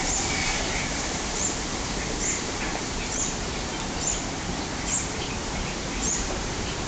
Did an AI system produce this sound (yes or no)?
yes